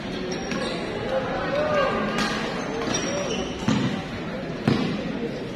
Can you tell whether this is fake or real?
real